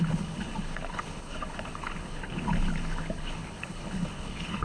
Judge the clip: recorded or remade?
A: remade